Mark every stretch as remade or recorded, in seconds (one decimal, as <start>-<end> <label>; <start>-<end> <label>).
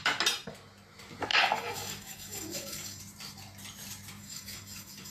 0.0-1.3 recorded; 1.3-3.0 remade; 3.0-4.2 recorded; 4.2-5.1 remade